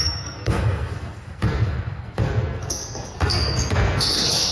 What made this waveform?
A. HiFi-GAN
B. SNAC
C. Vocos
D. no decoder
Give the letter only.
B